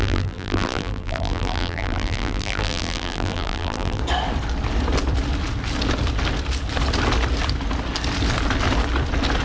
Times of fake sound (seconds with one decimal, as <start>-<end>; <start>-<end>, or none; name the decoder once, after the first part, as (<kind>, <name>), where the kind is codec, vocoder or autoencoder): 0.0-4.0 (vocoder, BigVGAN v2)